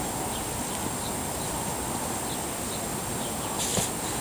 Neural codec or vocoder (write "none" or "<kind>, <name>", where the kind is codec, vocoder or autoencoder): none